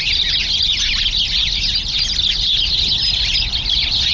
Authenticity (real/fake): real